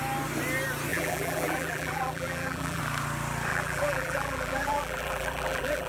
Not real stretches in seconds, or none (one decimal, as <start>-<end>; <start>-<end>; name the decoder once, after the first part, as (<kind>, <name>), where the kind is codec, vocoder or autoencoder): 0.9-2.8 (vocoder, BigVGAN v2); 3.5-5.9